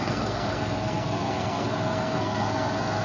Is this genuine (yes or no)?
no